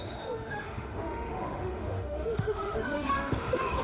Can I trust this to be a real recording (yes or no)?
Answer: no